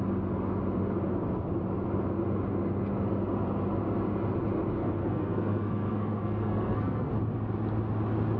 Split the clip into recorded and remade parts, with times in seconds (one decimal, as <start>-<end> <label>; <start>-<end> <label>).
0.0-4.8 recorded; 4.8-7.1 remade; 7.1-8.4 recorded